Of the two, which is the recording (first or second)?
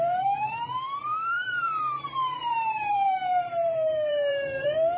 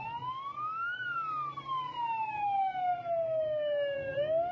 second